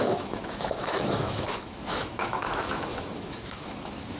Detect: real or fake fake